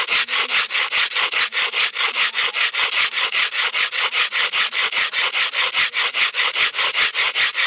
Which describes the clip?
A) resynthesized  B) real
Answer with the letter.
B